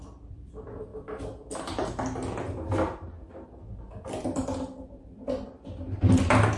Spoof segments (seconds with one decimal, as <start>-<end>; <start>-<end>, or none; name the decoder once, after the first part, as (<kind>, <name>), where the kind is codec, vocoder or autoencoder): none